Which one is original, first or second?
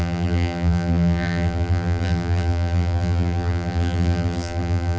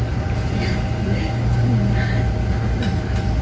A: second